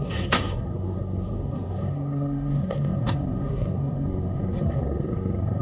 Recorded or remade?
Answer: remade